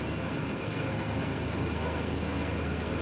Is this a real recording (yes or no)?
no